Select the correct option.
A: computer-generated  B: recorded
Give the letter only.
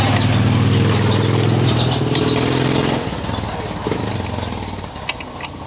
B